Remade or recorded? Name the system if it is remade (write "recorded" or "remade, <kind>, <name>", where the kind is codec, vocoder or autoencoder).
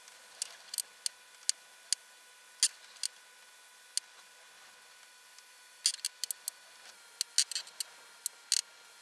recorded